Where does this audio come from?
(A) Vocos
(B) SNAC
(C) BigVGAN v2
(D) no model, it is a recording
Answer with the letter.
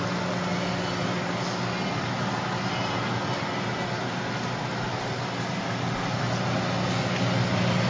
D